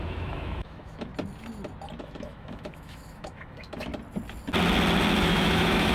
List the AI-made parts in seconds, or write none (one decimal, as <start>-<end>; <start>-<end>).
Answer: 0.0-1.1; 2.0-3.9; 5.2-5.9